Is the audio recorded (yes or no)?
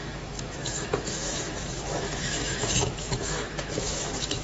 no